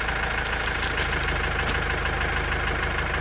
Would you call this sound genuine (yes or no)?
yes